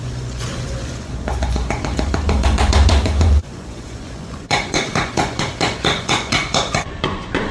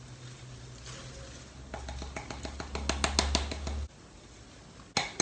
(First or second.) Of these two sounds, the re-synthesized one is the first